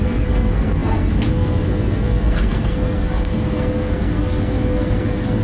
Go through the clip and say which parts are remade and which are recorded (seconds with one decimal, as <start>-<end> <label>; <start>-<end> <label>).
0.0-5.4 remade